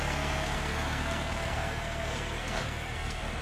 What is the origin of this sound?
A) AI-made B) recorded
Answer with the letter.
A